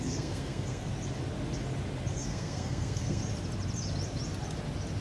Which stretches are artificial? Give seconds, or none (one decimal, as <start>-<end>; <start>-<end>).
0.0-0.9; 2.1-3.2